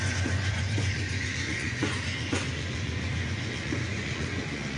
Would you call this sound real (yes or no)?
no